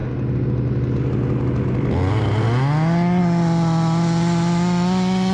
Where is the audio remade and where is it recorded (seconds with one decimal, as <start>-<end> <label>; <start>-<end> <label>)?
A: 0.0-5.3 recorded